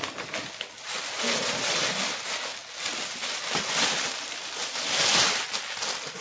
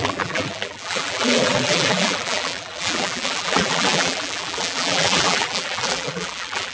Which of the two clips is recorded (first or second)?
first